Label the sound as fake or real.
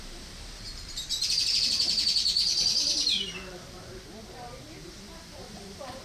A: fake